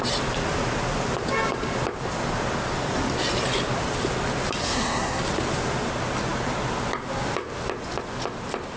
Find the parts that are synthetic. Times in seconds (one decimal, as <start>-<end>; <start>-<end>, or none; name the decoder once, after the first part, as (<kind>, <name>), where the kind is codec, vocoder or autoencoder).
4.6-5.2 (codec, SNAC)